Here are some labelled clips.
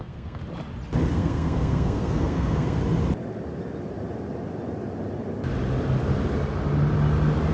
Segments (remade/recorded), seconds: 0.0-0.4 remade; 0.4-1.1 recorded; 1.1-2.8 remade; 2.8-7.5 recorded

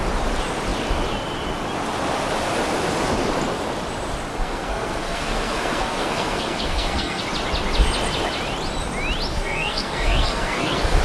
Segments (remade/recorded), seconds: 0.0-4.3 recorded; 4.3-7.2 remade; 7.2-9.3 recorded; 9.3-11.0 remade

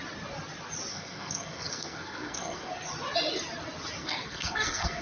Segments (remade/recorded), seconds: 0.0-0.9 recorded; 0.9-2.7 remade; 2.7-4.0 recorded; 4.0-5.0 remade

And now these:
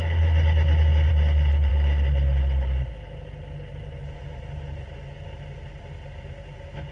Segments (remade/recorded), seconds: 0.0-6.9 recorded